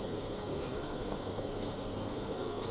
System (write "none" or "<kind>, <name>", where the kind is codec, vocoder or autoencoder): codec, SNAC